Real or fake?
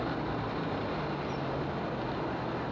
real